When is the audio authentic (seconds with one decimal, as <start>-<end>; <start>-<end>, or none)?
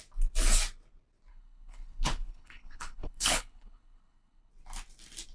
0.0-1.3; 4.5-5.3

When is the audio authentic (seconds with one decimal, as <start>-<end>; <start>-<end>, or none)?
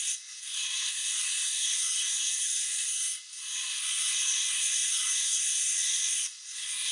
none